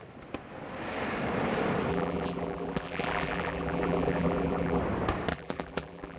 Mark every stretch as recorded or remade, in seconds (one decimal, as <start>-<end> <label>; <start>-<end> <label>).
0.0-1.9 recorded; 1.9-4.8 remade; 4.8-5.3 recorded; 5.3-6.2 remade